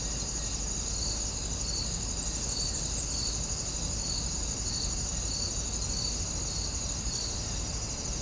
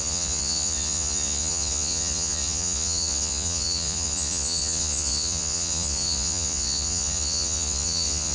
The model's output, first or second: second